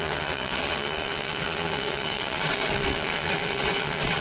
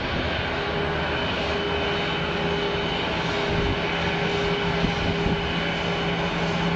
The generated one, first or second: first